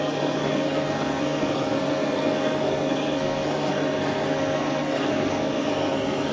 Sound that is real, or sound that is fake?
fake